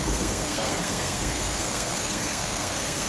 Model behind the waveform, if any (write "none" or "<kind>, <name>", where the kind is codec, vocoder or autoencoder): codec, SNAC